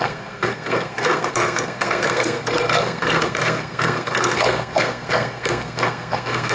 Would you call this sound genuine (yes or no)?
no